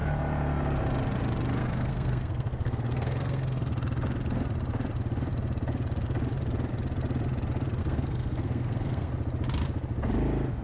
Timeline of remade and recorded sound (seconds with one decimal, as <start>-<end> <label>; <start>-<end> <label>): 0.0-1.6 recorded; 1.6-3.7 remade; 3.7-7.8 recorded; 7.8-9.1 remade; 9.1-10.6 recorded